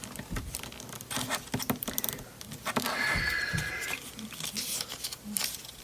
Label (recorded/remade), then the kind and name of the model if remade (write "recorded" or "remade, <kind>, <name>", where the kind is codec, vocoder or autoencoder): recorded